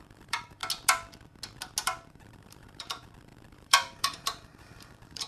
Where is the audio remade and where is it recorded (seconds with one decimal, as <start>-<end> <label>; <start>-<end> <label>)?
0.0-0.6 remade; 0.6-2.1 recorded; 2.1-5.3 remade